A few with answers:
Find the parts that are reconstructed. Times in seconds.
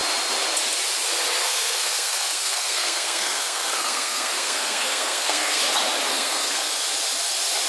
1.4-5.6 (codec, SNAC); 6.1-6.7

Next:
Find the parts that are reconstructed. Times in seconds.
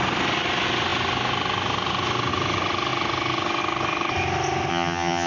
4.7-5.3 (vocoder, HiFi-GAN)